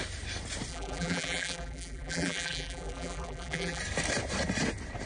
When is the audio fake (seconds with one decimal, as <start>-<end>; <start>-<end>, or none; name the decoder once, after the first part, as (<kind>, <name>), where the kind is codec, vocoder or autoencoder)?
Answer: 0.7-3.8 (vocoder, BigVGAN v2)